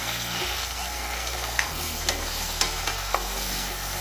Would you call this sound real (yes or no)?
no